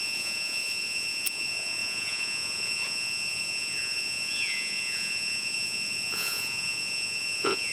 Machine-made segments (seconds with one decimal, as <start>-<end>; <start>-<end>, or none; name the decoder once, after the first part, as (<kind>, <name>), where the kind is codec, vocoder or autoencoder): 0.0-7.7 (vocoder, Vocos)